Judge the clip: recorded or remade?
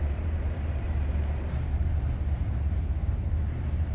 remade